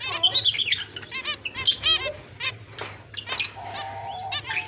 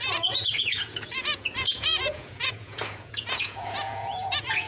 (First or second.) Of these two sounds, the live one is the first